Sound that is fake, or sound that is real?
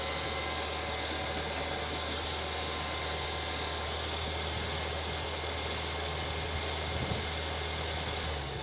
real